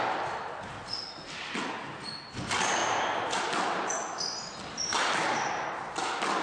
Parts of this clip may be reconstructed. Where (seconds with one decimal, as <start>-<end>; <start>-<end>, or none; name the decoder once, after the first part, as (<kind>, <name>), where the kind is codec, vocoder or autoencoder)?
none